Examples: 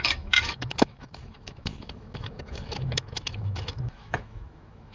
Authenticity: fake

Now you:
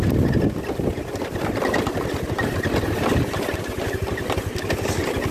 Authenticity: real